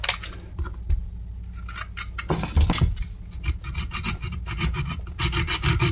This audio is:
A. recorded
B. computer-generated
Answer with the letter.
A